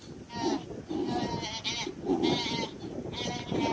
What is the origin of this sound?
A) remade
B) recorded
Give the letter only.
B